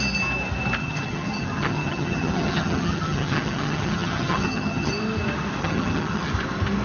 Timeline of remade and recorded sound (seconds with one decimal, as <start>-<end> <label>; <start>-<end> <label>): 0.0-0.8 recorded; 0.8-4.9 remade; 4.9-5.6 recorded; 5.6-6.3 remade; 6.3-6.8 recorded